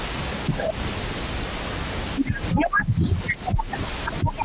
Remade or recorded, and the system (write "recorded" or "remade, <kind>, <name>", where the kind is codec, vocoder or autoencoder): recorded